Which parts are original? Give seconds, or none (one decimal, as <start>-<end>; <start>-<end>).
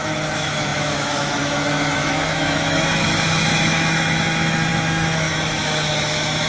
none